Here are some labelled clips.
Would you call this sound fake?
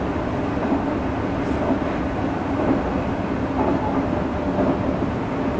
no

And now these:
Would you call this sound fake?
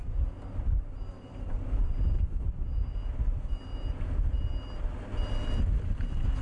no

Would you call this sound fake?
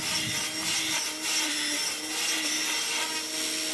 no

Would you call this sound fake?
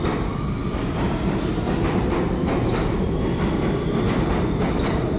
no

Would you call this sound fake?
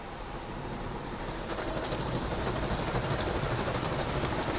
no